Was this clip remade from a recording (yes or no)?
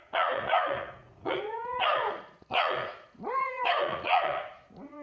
yes